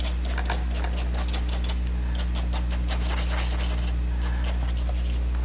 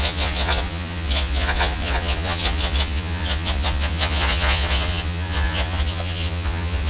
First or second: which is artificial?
second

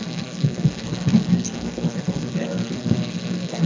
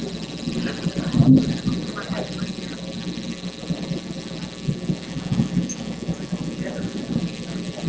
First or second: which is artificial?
first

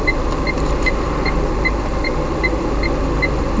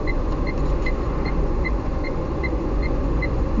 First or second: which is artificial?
second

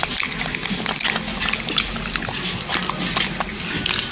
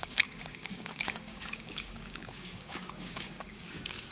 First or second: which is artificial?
second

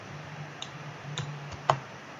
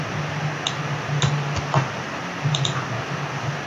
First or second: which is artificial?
first